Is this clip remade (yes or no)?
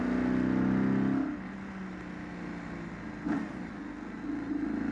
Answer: no